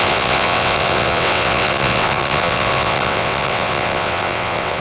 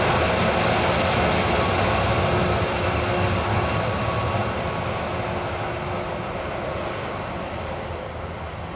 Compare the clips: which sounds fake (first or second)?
first